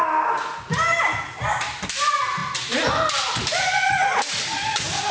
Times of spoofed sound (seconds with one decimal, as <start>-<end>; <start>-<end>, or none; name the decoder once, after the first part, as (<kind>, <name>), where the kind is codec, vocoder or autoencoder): none

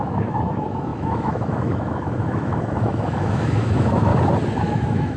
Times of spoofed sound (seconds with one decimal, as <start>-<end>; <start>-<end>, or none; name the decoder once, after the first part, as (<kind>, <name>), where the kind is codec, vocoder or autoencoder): 0.0-4.1 (autoencoder, DAC-VAE); 4.6-5.2

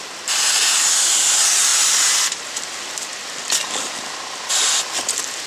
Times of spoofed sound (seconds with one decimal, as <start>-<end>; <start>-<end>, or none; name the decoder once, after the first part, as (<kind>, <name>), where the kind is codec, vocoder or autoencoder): none